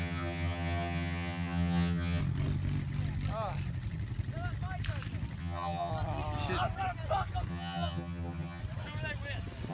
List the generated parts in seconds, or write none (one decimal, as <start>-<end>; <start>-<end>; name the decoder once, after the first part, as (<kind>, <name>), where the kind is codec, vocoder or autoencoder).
0.0-2.2 (vocoder, HiFi-GAN); 5.4-5.9; 7.5-8.6